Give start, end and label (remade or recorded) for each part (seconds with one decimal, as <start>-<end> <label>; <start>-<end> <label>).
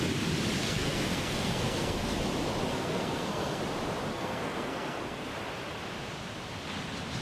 0.0-0.6 recorded; 0.6-2.2 remade; 2.2-2.7 recorded; 2.7-3.6 remade; 3.6-4.1 recorded; 4.1-5.3 remade; 5.3-7.2 recorded